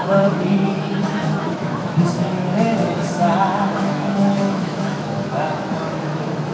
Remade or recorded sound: remade